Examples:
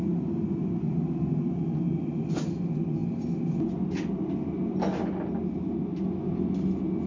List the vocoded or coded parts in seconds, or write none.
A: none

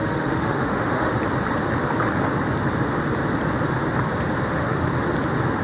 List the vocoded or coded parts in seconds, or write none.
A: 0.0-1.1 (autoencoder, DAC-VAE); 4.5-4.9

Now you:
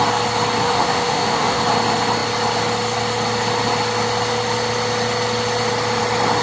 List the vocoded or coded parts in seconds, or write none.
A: 0.6-1.6 (autoencoder, DAC-VAE)

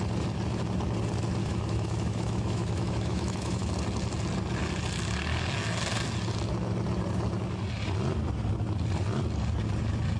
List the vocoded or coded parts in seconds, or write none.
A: 1.4-3.7 (autoencoder, DAC-VAE)

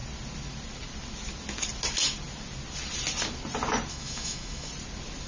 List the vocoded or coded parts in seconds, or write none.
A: 3.9-4.7 (autoencoder, DAC-VAE)

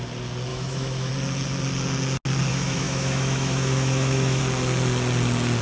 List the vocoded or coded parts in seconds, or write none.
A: 0.5-1.1 (autoencoder, DAC-VAE); 2.5-4.4